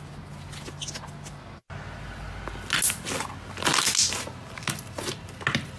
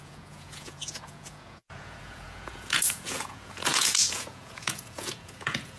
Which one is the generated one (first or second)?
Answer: second